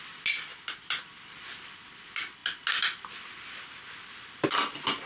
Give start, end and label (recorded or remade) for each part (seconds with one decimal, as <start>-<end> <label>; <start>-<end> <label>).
0.0-5.1 recorded